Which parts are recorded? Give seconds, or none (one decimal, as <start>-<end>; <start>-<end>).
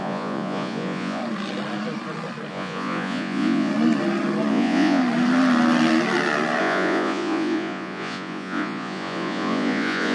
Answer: 1.2-2.5; 3.7-4.5; 5.0-6.6